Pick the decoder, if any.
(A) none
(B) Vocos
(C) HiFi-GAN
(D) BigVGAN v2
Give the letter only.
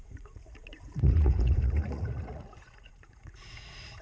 B